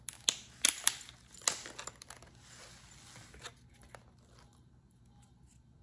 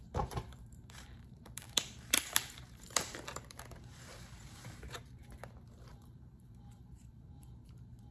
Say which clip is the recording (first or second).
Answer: first